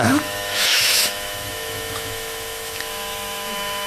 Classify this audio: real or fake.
fake